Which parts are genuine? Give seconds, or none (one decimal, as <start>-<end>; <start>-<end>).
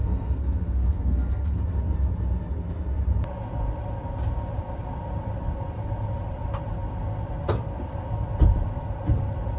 1.6-9.6